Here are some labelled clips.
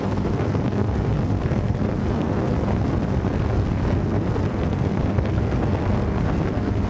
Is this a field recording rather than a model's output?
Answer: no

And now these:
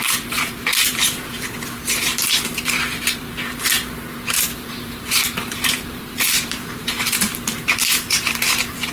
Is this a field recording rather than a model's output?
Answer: no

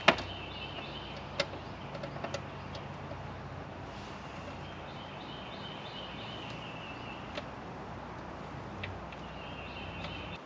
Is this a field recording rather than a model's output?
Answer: yes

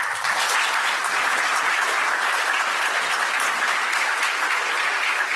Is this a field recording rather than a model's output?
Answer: yes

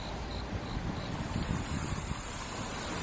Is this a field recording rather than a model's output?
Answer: yes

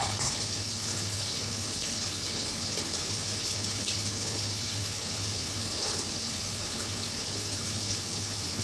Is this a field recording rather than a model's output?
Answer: no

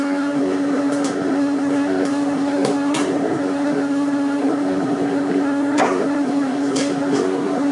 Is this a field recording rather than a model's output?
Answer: no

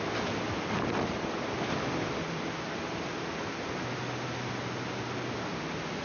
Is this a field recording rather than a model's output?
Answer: yes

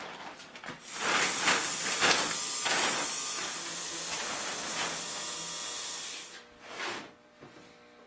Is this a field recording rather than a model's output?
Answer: yes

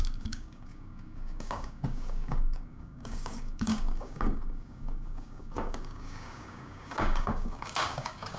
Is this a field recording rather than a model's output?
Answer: no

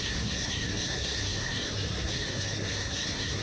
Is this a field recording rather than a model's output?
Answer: no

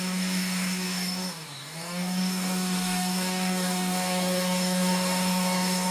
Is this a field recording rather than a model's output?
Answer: no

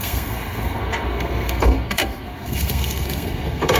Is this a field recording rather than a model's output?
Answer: no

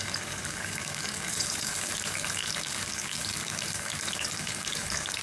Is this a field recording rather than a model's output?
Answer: no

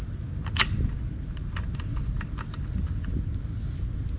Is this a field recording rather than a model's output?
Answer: yes